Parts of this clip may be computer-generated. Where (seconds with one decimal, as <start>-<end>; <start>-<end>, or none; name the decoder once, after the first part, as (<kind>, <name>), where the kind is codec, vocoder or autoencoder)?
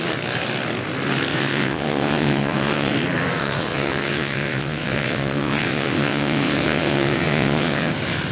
1.3-2.9 (vocoder, WaveNeXt); 3.4-7.9